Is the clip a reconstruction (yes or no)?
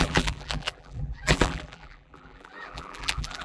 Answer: yes